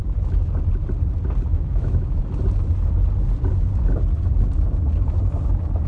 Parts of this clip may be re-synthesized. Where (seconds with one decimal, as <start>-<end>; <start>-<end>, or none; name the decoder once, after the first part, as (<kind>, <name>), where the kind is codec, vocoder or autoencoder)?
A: 1.5-2.2 (autoencoder, DAC-VAE)